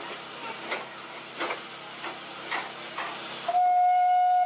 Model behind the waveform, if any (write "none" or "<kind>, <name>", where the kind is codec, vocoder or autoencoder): none